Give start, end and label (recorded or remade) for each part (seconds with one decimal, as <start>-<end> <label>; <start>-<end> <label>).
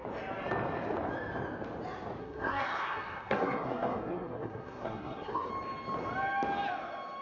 0.0-2.2 recorded; 2.2-5.5 remade; 5.5-7.2 recorded